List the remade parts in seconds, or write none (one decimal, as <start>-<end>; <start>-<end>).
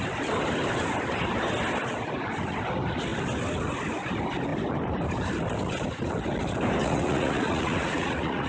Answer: 6.8-8.5